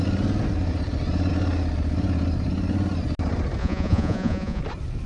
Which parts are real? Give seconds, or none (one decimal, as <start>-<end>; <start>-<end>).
0.0-3.6; 4.6-5.1